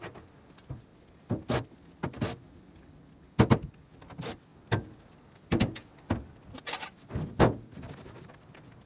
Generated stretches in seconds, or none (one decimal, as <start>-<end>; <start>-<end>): none